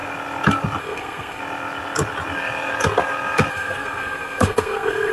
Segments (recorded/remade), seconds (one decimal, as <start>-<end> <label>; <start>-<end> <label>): 0.0-0.8 recorded; 0.8-1.4 remade; 1.4-3.5 recorded; 3.5-5.1 remade